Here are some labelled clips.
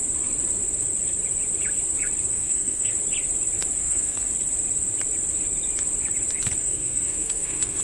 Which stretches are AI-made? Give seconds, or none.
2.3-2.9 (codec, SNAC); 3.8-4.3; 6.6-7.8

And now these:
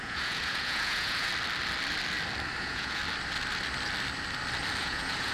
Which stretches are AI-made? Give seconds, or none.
0.0-1.3 (vocoder, Vocos); 2.6-3.0; 4.8-5.3

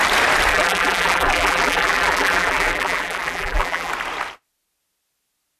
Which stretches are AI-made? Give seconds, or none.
0.5-3.9 (vocoder, BigVGAN v2)

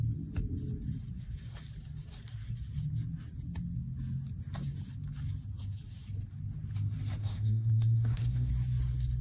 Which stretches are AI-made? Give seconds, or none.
7.2-8.5 (codec, SNAC)

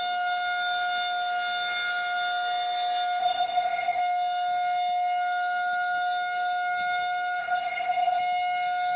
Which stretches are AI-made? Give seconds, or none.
3.2-4.0 (codec, ZipCodec); 7.4-8.2

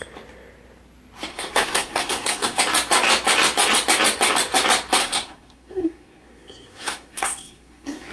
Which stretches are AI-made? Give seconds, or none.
1.3-2.6 (codec, SNAC); 5.0-8.1

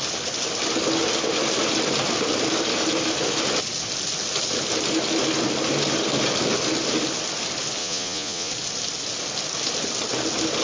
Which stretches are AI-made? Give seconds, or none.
7.8-8.5 (vocoder, Vocos)

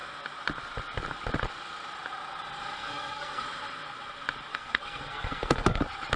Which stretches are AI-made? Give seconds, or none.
2.8-3.4 (codec, SNAC); 4.5-5.8